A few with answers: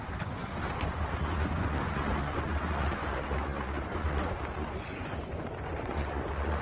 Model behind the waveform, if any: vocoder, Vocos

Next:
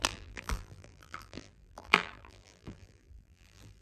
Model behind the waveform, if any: vocoder, BigVGAN v2